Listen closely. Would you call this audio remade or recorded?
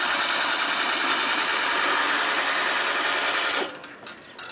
recorded